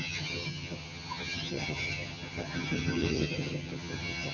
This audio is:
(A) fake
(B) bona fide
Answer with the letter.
A